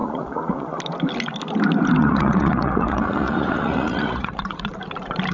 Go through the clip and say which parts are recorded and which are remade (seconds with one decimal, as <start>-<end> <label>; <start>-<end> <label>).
0.0-0.8 remade; 0.8-2.0 recorded; 2.0-4.7 remade; 4.7-5.3 recorded